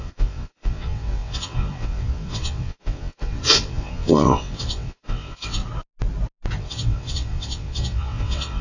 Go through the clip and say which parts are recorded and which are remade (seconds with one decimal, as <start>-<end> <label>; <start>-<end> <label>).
0.0-5.6 remade; 5.6-6.6 recorded; 6.6-8.6 remade